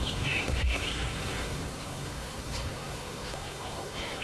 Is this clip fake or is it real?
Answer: fake